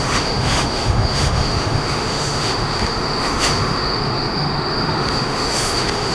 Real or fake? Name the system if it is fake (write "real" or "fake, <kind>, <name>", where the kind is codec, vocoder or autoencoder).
fake, autoencoder, DAC-VAE